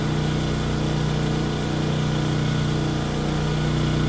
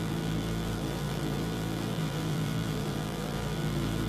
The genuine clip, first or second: first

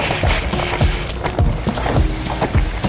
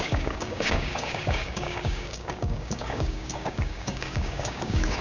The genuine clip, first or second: first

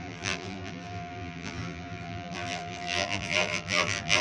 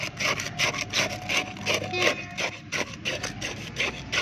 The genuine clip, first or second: second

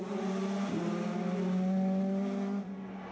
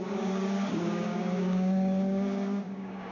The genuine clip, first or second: first